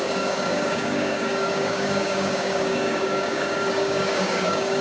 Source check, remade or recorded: remade